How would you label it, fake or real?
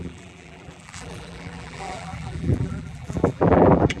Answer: fake